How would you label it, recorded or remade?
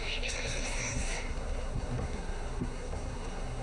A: remade